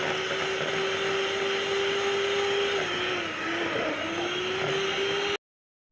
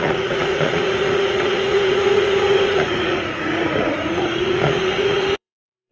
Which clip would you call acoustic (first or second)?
first